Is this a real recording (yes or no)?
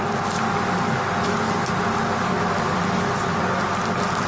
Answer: yes